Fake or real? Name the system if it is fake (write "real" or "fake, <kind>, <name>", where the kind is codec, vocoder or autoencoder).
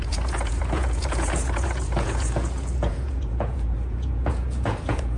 fake, vocoder, Vocos